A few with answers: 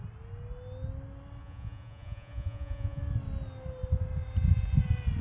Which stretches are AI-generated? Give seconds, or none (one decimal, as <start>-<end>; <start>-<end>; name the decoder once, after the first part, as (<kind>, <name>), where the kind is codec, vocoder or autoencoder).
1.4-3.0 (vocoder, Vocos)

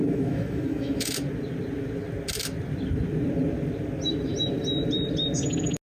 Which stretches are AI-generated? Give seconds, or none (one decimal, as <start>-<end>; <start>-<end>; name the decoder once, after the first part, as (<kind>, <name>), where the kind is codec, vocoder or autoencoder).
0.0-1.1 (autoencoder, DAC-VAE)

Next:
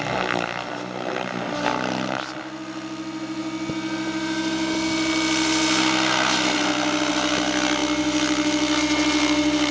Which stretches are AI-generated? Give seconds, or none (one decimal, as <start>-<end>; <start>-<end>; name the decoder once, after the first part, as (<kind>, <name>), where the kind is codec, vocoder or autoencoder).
none

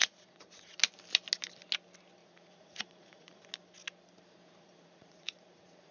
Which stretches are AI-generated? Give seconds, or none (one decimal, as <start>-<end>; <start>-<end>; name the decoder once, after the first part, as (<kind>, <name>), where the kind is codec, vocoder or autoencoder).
0.0-0.8 (vocoder, Vocos); 2.2-3.4; 4.4-5.9

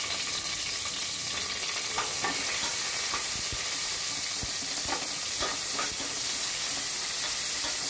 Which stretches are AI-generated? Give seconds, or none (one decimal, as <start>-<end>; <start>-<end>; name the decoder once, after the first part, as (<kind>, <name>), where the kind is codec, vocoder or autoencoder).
none

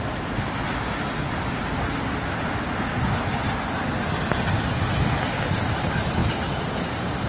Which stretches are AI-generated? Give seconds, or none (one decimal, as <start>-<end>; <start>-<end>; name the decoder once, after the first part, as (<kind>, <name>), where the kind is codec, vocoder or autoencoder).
none